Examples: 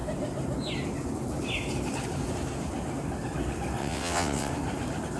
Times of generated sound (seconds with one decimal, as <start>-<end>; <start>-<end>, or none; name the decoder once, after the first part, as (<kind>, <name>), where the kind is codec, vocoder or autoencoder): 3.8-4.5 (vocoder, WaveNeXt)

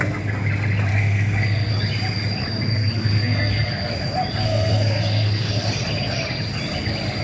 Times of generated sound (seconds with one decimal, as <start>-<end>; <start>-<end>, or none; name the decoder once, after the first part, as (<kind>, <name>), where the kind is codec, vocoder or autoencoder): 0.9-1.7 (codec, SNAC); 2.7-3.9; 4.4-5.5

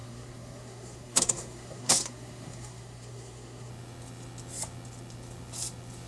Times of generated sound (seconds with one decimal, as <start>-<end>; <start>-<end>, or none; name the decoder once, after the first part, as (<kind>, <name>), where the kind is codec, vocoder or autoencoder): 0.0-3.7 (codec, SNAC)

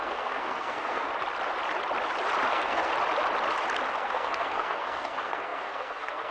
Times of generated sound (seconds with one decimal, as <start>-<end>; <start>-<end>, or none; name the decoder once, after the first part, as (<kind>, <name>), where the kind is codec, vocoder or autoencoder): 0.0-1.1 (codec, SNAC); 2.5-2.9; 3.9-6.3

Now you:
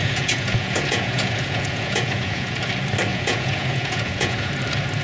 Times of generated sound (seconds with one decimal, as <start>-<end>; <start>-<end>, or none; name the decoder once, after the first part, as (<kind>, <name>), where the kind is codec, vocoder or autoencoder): 0.0-2.7 (vocoder, Vocos); 3.1-4.5

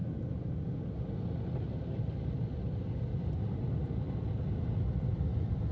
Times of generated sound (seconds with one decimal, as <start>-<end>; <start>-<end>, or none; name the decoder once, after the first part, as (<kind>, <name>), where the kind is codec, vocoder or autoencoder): none

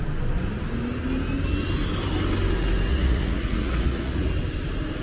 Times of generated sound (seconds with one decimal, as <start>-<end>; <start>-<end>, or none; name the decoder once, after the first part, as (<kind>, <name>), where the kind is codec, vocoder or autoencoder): 2.9-4.3 (vocoder, Vocos)

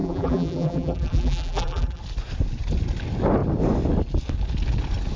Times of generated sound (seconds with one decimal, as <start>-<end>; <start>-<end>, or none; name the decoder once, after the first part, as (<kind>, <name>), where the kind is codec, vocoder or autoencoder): 0.0-2.0 (vocoder, BigVGAN v2)